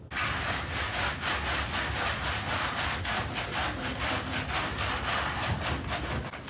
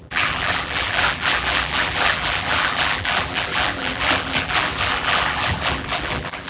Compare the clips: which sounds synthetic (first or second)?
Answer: second